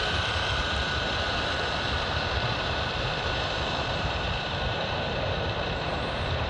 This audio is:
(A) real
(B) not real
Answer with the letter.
B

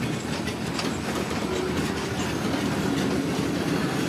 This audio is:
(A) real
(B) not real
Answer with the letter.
A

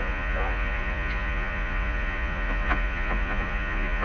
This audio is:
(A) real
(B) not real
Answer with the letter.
B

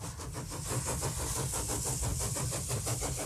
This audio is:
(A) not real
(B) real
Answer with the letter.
B